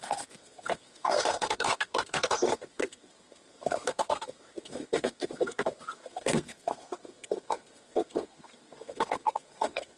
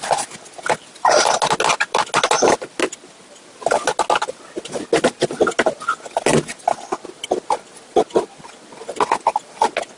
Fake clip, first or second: first